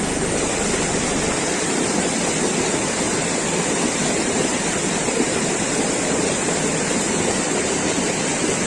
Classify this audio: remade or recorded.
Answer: recorded